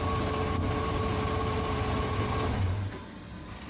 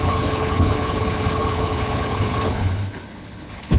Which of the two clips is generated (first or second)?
second